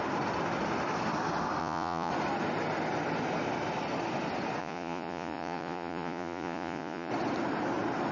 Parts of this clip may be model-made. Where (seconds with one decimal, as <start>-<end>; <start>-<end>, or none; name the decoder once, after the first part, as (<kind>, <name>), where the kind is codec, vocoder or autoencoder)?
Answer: 1.6-2.1 (vocoder, Vocos); 4.6-7.1